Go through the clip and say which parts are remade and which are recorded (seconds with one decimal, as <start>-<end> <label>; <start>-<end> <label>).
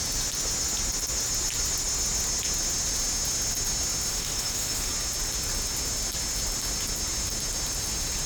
0.0-4.1 recorded; 4.1-4.9 remade; 4.9-8.3 recorded